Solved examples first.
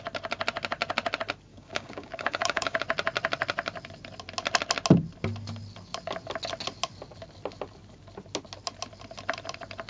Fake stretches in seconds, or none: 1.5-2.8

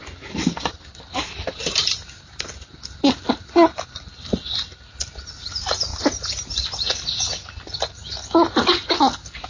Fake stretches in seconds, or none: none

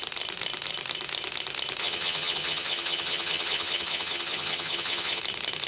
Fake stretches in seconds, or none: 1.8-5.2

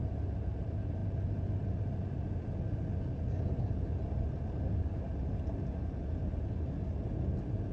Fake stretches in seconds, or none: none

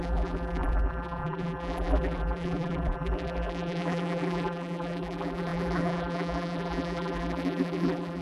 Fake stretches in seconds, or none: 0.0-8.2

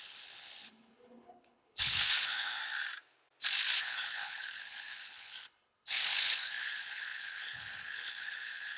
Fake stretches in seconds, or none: 0.0-2.6; 3.8-8.8

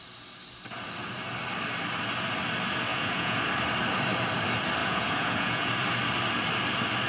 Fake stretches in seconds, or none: 2.9-3.4; 4.8-5.7

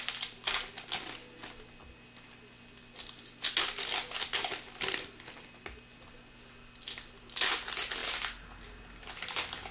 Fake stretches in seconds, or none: none